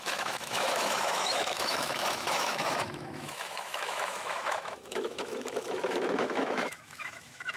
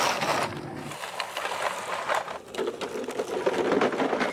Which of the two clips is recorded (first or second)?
second